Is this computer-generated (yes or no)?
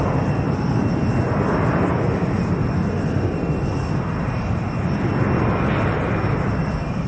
no